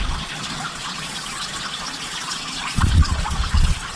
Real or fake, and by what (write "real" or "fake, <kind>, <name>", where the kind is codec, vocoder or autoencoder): fake, vocoder, Vocos